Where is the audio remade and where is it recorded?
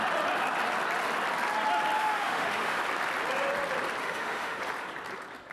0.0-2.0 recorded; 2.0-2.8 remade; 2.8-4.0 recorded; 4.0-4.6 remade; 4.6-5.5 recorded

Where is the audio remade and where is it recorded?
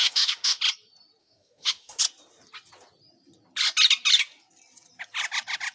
0.0-0.6 remade; 0.6-1.2 recorded; 1.2-2.0 remade; 2.0-5.7 recorded